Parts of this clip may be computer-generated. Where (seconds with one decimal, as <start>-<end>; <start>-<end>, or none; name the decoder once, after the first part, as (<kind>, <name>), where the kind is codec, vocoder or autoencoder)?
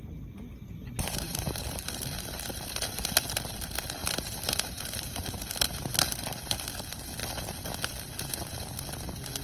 0.8-1.6 (vocoder, BigVGAN v2); 4.0-6.6